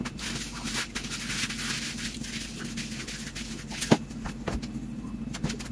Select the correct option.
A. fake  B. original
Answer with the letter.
B